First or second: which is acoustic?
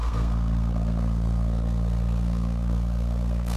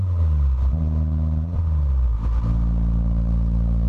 second